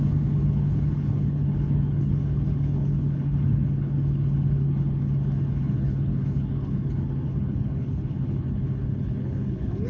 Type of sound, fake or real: fake